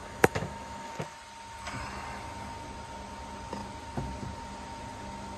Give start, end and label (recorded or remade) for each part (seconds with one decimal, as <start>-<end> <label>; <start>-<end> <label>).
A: 0.0-0.9 remade; 0.9-5.4 recorded